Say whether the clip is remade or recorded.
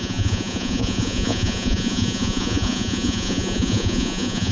remade